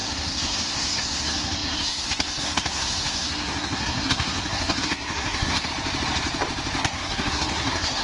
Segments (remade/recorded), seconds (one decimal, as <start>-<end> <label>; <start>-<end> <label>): 0.0-5.7 remade; 5.7-6.8 recorded; 6.8-8.0 remade